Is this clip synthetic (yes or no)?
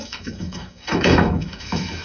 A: yes